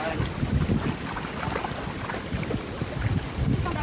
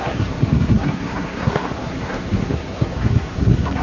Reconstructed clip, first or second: second